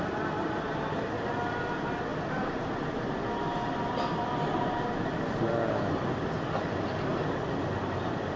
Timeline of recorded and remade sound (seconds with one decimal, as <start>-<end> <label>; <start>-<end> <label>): 0.0-8.4 recorded